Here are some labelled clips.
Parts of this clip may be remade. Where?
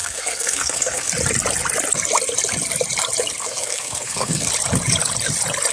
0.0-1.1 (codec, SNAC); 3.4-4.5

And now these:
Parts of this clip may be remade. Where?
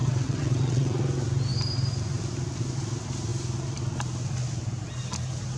0.0-1.0 (vocoder, WaveNeXt)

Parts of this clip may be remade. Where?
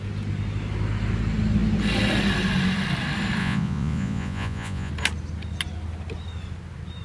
3.4-4.9 (vocoder, Vocos)